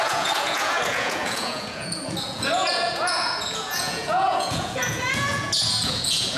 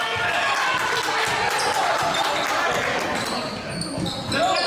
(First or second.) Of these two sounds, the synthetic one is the first